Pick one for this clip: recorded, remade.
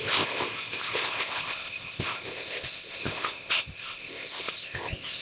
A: remade